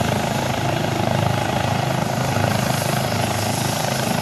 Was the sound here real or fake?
real